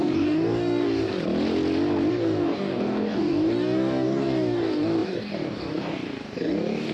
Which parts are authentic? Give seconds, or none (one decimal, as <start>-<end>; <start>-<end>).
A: 1.1-2.1